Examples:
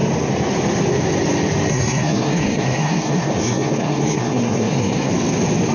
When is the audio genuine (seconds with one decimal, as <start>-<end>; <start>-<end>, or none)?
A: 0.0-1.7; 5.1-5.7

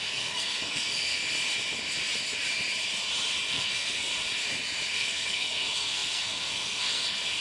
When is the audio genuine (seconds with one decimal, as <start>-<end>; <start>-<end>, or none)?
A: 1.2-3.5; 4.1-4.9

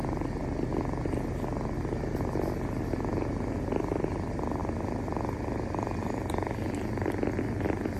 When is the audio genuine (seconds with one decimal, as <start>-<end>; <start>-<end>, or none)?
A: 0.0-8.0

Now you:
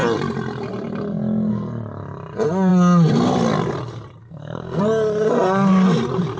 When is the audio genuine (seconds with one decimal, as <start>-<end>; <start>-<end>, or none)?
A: 0.0-4.2; 4.8-6.4

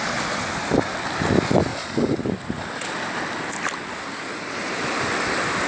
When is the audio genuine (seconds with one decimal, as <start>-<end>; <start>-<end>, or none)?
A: 0.0-5.7

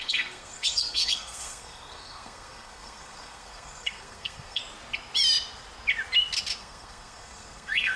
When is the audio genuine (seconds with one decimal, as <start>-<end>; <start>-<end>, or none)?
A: 4.6-6.6

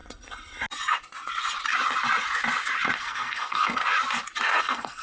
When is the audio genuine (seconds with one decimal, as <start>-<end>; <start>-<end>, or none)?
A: 0.0-3.0; 3.8-4.6

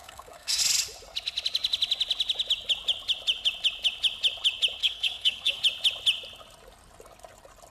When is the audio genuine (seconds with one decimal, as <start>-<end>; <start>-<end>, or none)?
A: 0.6-4.8; 5.6-7.7